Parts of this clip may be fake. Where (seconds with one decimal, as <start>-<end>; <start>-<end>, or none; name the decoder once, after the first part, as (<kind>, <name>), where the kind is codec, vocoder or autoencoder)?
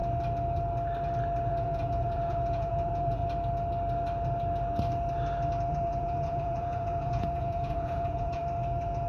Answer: 1.5-3.2 (vocoder, Vocos); 5.7-8.4